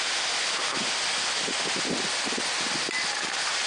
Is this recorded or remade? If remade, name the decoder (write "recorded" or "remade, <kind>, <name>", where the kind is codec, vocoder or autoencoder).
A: recorded